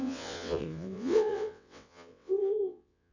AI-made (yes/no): yes